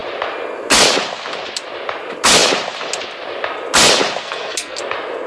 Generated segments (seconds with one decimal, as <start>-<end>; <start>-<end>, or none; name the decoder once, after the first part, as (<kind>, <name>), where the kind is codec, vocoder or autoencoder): 4.2-4.8 (codec, SNAC)

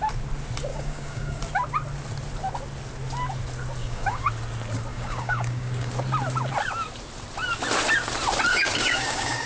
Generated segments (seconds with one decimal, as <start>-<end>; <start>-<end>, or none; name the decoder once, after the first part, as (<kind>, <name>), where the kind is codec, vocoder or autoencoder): 0.7-1.4 (codec, DAC); 3.8-4.3; 4.9-5.9; 8.5-9.5